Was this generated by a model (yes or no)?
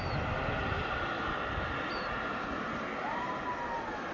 no